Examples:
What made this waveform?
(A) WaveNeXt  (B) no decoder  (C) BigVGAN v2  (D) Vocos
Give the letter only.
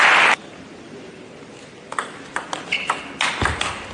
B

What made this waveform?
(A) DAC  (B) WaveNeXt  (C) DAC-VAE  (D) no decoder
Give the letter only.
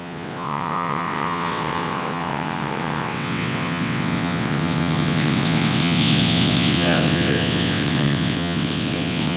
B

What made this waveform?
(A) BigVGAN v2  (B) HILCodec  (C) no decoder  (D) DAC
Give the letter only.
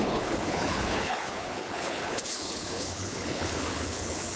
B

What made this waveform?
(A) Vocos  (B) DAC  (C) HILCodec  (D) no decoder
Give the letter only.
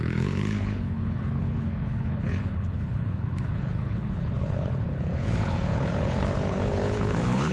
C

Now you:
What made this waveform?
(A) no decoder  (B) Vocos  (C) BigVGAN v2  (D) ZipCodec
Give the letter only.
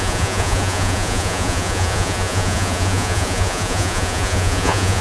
B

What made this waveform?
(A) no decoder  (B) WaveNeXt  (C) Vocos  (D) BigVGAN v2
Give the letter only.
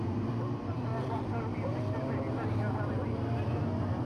A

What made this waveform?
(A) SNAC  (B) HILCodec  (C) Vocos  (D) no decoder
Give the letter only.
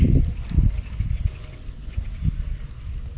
D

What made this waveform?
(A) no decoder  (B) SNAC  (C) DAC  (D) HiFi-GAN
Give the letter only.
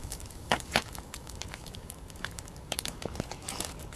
C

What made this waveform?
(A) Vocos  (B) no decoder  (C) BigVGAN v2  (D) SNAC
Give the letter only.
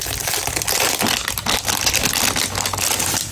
B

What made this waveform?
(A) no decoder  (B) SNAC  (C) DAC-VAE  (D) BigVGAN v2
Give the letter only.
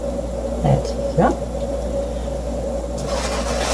A